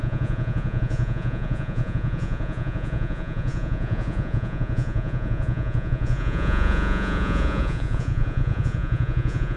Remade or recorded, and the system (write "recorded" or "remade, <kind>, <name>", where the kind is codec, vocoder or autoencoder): remade, vocoder, Vocos